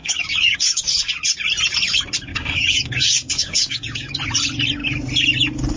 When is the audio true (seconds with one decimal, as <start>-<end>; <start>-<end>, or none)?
1.1-2.3; 4.2-5.8